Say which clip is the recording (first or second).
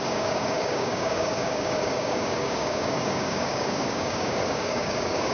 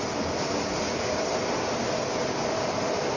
second